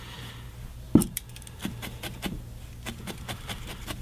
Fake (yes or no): no